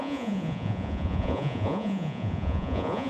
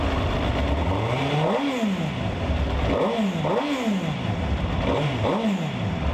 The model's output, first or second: first